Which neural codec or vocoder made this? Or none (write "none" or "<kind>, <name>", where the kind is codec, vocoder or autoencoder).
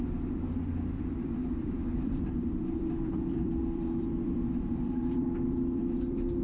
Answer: vocoder, BigVGAN v2